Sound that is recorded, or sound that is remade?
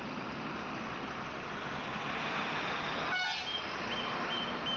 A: recorded